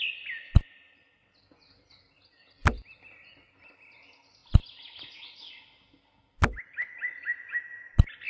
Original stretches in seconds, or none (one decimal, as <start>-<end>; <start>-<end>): 0.0-8.3